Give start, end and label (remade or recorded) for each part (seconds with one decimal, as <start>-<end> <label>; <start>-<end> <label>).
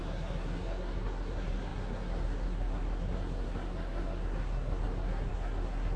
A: 0.0-6.0 remade